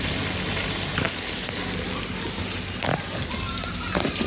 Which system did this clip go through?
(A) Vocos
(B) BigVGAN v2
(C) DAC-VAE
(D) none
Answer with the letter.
D